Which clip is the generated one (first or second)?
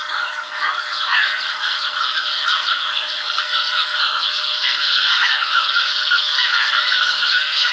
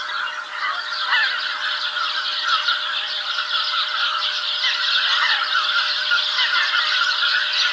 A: first